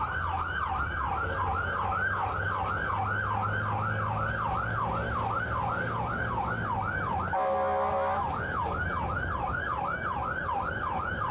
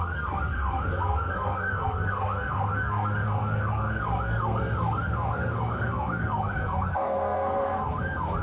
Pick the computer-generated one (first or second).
second